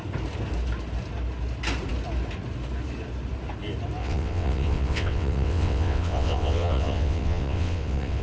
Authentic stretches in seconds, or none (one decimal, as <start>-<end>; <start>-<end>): 0.0-4.0